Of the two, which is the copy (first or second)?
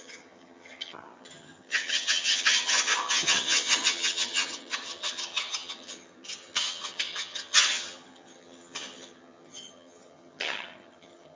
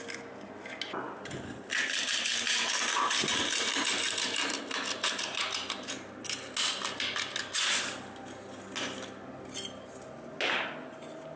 first